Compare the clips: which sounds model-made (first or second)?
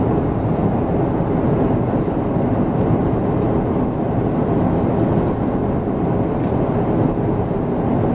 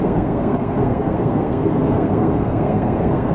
second